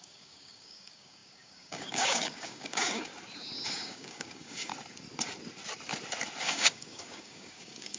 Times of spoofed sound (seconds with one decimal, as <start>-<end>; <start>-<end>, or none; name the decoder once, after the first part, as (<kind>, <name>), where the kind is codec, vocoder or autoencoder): 0.0-3.1 (codec, DAC); 3.7-4.7; 6.4-8.0